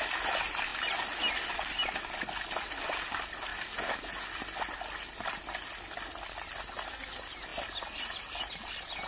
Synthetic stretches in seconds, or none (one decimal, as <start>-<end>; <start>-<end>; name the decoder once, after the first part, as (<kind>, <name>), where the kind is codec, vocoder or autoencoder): none